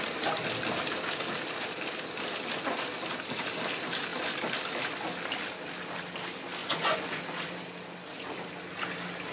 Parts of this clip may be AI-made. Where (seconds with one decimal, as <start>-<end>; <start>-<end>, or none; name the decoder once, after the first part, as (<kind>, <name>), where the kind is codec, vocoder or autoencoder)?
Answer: 6.6-7.2 (vocoder, Vocos)

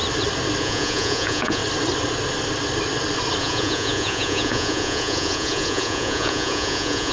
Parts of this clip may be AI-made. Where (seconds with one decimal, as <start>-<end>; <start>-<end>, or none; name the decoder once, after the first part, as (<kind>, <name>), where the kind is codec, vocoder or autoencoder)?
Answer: 0.6-1.6 (vocoder, Vocos); 3.4-7.1

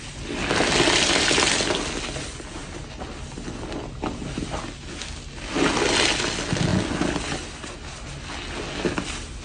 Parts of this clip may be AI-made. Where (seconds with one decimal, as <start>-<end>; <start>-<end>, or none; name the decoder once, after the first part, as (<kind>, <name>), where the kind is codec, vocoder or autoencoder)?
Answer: none